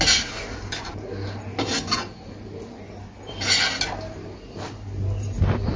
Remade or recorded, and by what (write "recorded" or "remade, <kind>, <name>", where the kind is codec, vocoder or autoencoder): recorded